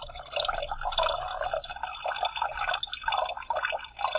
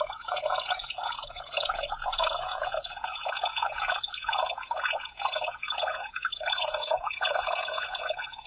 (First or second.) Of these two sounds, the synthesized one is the second